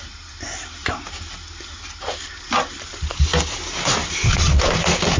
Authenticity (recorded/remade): recorded